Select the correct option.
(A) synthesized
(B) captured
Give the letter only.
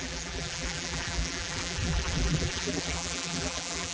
A